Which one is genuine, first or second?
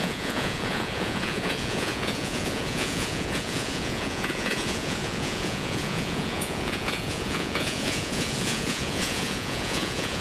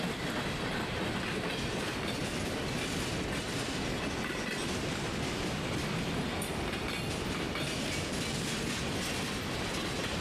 second